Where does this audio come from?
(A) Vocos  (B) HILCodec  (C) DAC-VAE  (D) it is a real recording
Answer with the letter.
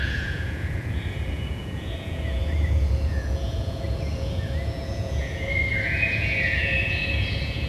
A